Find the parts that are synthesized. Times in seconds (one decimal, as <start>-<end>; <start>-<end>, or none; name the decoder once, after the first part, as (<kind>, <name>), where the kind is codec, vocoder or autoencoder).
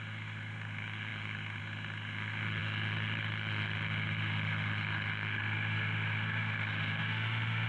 0.0-7.7 (autoencoder, DAC-VAE)